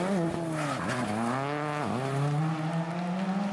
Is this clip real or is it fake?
real